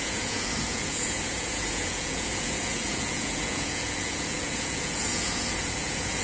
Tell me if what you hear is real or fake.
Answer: fake